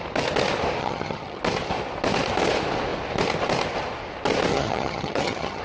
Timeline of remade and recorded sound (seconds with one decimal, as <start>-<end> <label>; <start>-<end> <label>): 0.0-0.8 recorded; 0.8-1.4 remade; 1.4-4.5 recorded; 4.5-5.6 remade